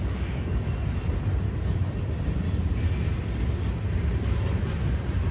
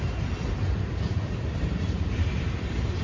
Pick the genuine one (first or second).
first